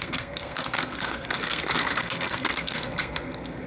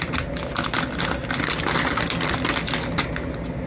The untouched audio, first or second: second